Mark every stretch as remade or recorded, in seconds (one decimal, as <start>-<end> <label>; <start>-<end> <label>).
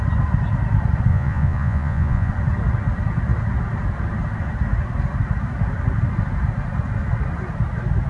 0.0-1.1 recorded; 1.1-2.3 remade; 2.3-8.1 recorded